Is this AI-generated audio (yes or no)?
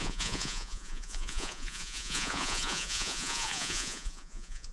yes